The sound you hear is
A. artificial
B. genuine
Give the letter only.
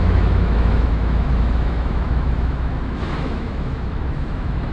A